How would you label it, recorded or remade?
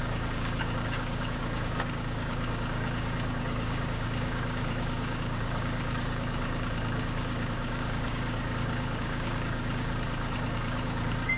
remade